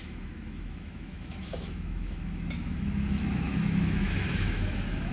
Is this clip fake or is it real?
fake